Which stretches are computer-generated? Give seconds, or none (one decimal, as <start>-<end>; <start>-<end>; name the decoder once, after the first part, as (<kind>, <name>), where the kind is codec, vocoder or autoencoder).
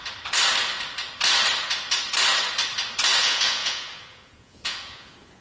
3.2-5.4 (vocoder, Vocos)